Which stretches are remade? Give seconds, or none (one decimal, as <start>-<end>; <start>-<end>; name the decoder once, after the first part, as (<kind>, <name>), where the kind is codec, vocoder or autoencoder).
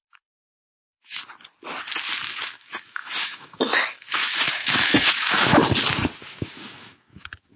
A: 0.0-1.2 (autoencoder, DAC-VAE); 2.3-5.6; 6.2-7.6